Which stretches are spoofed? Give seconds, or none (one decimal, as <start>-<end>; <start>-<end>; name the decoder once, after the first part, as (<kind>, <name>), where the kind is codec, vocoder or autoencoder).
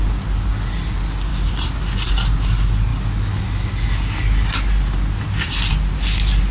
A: none